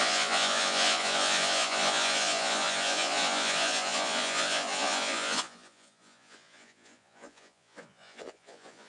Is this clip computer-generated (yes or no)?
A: yes